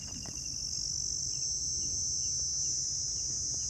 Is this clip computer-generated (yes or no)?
yes